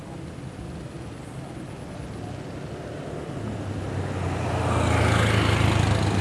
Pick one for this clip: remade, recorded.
recorded